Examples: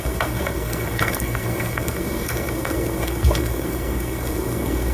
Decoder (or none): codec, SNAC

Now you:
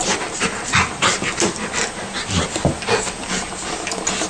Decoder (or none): none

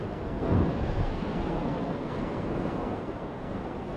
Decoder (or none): codec, SNAC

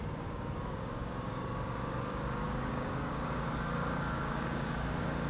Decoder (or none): codec, DAC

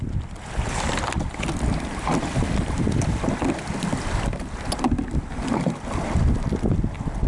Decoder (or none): none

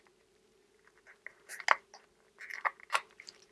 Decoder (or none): none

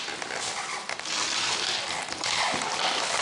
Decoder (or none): vocoder, BigVGAN v2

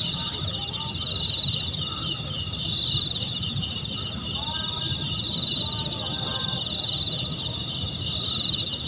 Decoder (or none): none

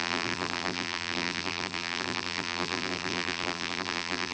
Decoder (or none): vocoder, BigVGAN v2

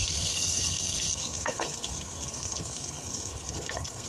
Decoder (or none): codec, SNAC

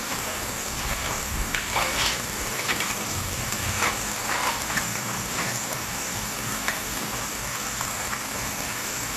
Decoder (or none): codec, DAC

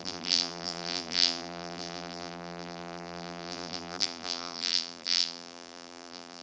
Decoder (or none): vocoder, BigVGAN v2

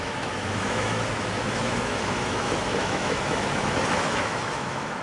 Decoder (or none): autoencoder, DAC-VAE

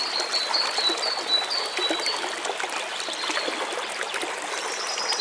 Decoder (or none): none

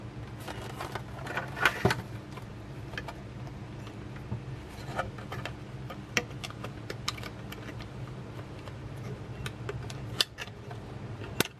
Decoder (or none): none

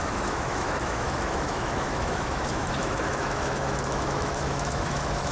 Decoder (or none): autoencoder, DAC-VAE